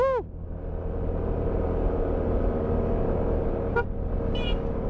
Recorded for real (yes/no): yes